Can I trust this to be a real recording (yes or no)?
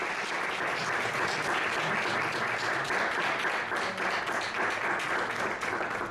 yes